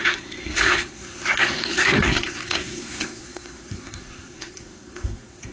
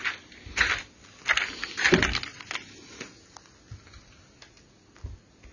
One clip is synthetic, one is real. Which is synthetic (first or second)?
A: first